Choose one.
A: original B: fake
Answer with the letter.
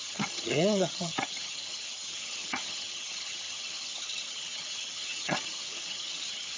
B